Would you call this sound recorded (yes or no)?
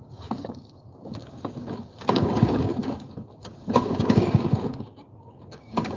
no